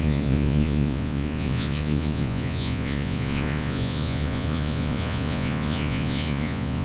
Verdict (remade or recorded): remade